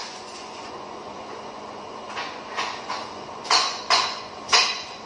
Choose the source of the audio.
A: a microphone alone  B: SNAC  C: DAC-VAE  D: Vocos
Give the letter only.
D